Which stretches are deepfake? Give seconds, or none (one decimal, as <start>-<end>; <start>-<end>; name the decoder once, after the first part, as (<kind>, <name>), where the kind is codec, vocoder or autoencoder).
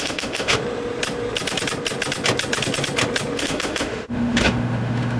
0.0-0.6 (autoencoder, DAC-VAE); 3.4-5.2